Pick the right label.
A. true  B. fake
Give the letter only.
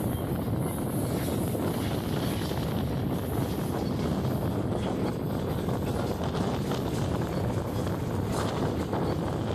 A